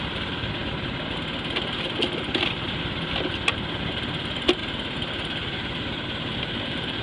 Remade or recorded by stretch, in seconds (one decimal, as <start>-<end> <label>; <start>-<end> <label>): 0.0-7.0 recorded